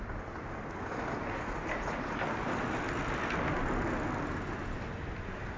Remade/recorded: recorded